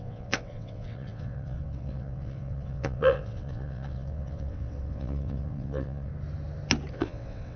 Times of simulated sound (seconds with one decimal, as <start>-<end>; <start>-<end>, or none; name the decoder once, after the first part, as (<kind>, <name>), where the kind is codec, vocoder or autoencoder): 0.0-6.1 (vocoder, WaveNeXt); 6.9-7.6